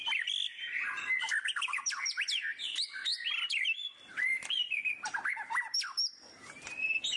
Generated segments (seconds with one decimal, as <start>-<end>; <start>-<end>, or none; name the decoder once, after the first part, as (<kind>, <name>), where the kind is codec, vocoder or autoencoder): 0.0-0.5 (vocoder, BigVGAN v2); 1.7-7.2